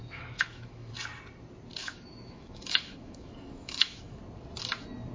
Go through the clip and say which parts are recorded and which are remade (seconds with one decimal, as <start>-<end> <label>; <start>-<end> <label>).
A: 0.0-0.9 remade; 0.9-1.8 recorded; 1.8-4.2 remade; 4.2-5.1 recorded